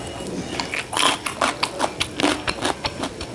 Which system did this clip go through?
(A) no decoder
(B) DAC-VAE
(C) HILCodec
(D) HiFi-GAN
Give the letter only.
A